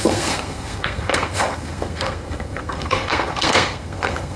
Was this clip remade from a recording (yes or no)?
yes